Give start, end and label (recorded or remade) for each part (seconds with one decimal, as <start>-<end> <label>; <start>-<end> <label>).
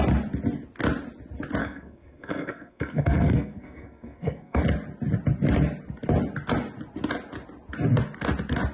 0.0-1.6 recorded; 1.6-4.6 remade; 4.6-8.7 recorded